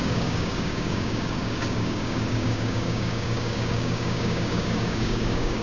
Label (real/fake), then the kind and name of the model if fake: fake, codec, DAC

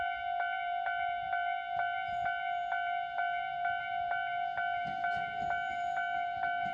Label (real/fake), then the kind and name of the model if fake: real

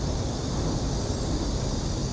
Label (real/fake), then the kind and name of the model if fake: real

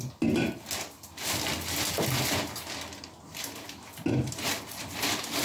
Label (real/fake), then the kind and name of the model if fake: real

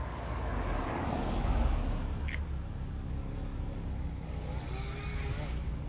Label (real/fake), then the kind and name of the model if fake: fake, codec, DAC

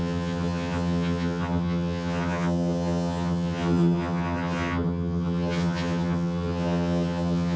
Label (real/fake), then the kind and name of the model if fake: fake, vocoder, HiFi-GAN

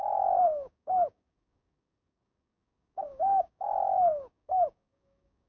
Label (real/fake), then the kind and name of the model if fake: fake, codec, DAC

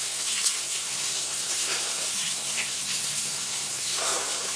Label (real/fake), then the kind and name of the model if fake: fake, codec, SNAC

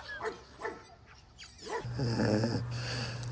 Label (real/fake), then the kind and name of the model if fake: real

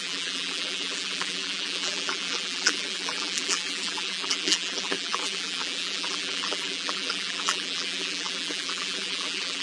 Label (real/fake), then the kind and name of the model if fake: fake, vocoder, BigVGAN v2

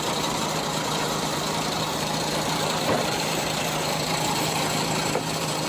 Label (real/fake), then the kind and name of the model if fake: fake, vocoder, BigVGAN v2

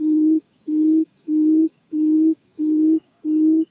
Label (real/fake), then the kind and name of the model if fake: fake, codec, DAC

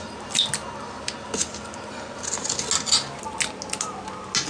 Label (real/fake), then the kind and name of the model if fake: real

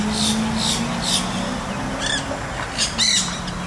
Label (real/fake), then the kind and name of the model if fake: real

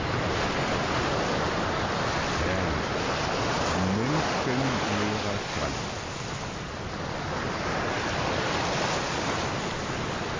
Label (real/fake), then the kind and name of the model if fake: real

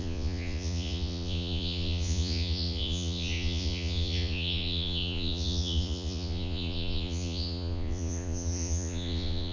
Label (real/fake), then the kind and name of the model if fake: fake, vocoder, Vocos